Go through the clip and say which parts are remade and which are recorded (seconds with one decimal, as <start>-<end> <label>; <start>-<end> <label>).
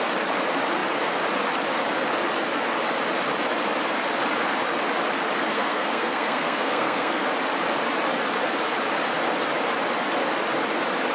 0.0-5.5 recorded; 5.5-7.2 remade; 7.2-11.1 recorded